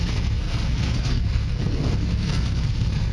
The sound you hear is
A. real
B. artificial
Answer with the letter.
B